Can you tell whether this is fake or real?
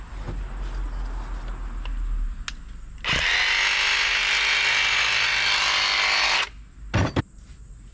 real